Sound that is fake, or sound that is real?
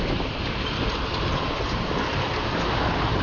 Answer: real